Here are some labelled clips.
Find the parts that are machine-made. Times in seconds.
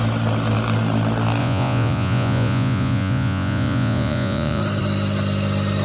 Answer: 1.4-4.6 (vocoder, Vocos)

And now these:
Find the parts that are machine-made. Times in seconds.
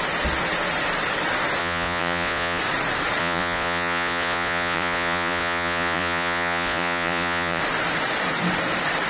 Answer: 1.6-2.6 (vocoder, Vocos); 3.2-7.6